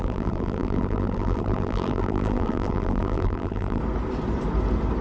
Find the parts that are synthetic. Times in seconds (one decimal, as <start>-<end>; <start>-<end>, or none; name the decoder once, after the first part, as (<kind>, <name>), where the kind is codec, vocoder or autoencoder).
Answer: 0.0-3.8 (vocoder, BigVGAN v2)